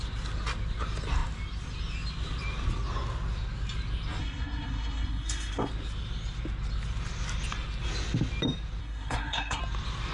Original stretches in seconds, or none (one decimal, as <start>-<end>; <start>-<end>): 0.0-4.2; 5.7-8.8; 9.6-10.1